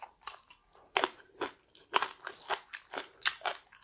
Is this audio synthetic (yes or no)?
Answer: no